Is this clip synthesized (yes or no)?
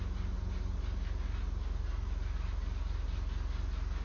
no